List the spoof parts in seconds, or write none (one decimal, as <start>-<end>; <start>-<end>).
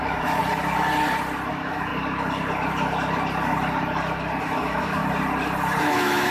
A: 0.0-0.4; 1.5-1.9; 4.4-5.0; 5.8-6.3